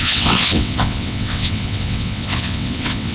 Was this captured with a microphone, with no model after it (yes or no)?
no